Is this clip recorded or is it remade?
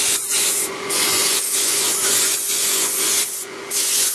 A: remade